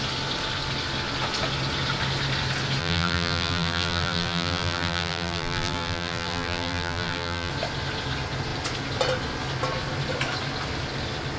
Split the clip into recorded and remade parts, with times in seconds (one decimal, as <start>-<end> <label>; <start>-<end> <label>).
0.0-2.8 recorded; 2.8-7.5 remade; 7.5-11.4 recorded